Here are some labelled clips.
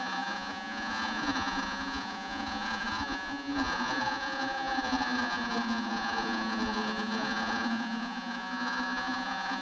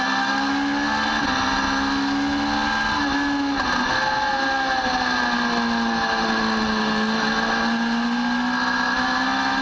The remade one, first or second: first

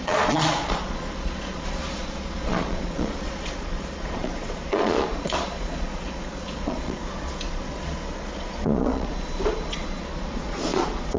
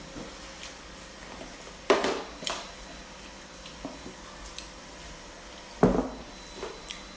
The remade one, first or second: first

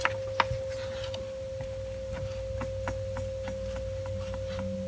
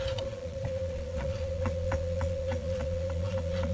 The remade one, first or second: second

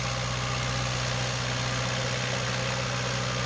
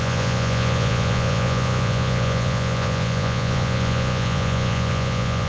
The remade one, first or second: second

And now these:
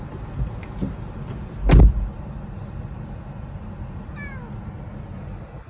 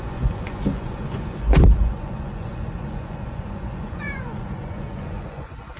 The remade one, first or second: second